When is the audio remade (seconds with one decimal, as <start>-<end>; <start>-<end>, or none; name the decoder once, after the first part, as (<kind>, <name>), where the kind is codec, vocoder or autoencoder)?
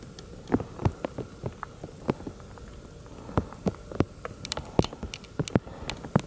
none